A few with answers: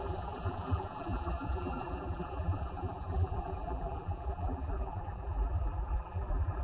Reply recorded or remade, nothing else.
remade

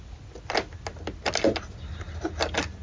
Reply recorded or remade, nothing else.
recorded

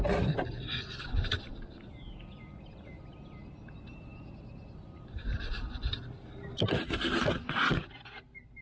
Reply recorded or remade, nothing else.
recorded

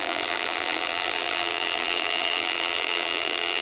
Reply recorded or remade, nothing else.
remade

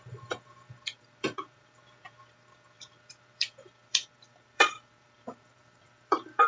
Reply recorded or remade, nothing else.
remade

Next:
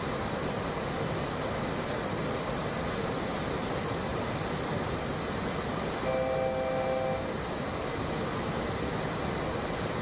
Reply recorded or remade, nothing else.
recorded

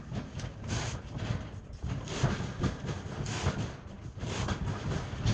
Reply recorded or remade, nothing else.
recorded